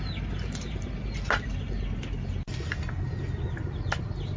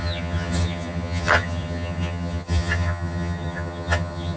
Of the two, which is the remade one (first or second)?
second